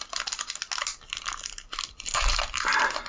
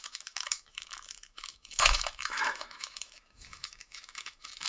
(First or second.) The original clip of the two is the first